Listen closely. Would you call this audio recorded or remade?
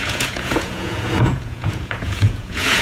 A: remade